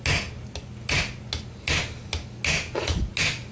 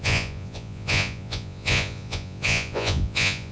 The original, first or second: first